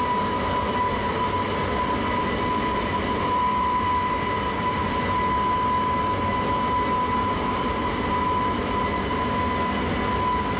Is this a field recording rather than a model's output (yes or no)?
yes